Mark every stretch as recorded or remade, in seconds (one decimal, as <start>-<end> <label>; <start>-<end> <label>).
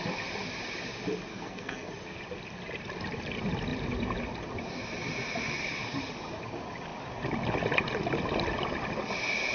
0.0-1.3 recorded; 1.3-1.9 remade; 1.9-9.5 recorded